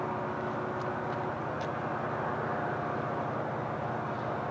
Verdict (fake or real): real